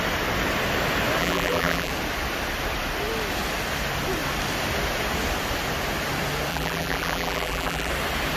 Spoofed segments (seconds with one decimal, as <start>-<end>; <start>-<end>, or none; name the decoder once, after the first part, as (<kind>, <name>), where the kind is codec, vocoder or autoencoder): 1.2-1.9 (vocoder, BigVGAN v2); 6.5-7.9